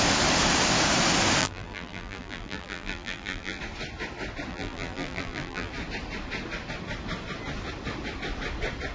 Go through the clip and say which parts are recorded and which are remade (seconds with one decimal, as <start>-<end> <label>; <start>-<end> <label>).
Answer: 0.0-1.4 recorded; 1.4-3.6 remade; 3.6-4.5 recorded; 4.5-5.7 remade; 5.7-8.9 recorded